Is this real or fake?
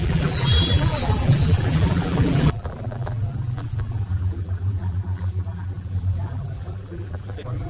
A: fake